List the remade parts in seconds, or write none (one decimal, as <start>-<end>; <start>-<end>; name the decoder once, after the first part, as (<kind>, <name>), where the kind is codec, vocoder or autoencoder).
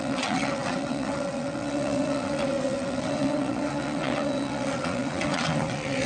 0.0-6.1 (vocoder, WaveNeXt)